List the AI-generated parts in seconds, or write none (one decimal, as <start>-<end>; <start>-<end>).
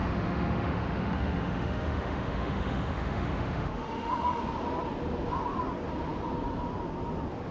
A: 0.0-4.4